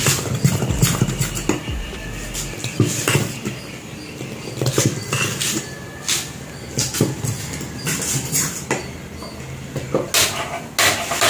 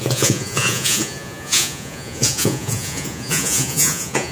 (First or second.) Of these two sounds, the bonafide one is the first